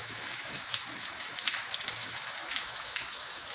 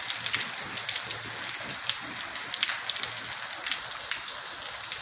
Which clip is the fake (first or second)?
first